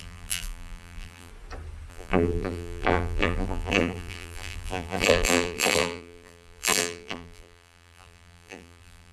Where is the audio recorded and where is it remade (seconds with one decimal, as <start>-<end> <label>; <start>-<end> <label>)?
0.0-1.3 remade; 1.3-1.9 recorded; 1.9-9.1 remade